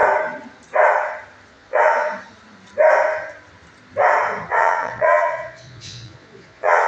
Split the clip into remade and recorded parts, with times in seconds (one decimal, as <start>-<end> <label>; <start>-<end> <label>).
0.0-1.5 recorded; 1.5-2.1 remade; 2.1-4.5 recorded; 4.5-6.9 remade